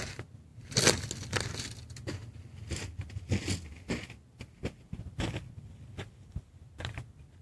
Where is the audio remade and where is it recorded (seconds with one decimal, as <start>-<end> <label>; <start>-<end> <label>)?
0.0-0.5 recorded; 0.5-1.1 remade; 1.1-7.4 recorded